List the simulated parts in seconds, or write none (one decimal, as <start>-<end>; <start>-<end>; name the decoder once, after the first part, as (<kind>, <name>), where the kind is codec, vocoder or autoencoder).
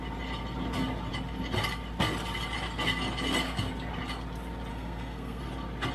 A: 4.7-5.4 (codec, SNAC)